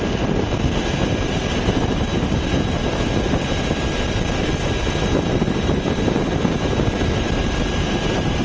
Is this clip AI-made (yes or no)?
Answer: no